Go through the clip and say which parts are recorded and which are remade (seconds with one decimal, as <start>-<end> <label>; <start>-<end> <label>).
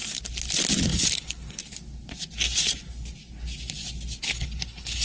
0.0-0.8 recorded; 0.8-1.6 remade; 1.6-4.2 recorded; 4.2-5.0 remade